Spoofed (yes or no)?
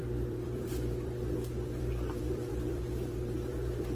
yes